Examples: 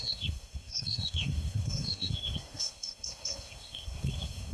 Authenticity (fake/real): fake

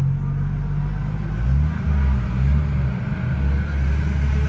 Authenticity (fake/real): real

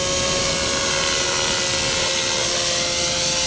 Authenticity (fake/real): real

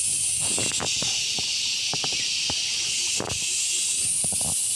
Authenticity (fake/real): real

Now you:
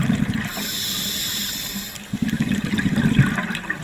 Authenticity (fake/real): real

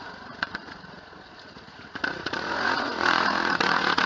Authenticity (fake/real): fake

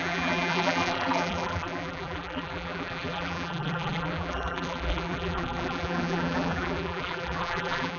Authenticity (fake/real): fake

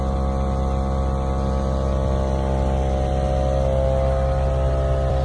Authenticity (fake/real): real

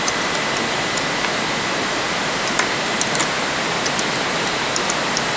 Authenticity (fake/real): real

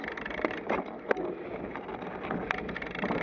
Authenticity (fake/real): real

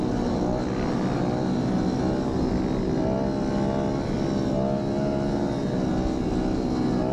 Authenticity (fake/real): real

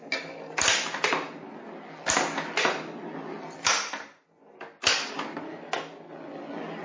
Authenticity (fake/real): real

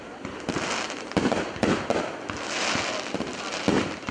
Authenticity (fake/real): real